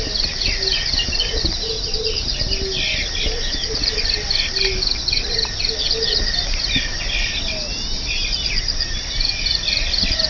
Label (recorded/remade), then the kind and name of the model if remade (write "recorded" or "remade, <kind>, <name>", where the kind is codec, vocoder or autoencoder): recorded